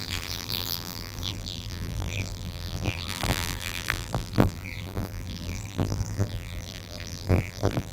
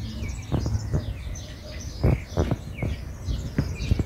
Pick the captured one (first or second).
second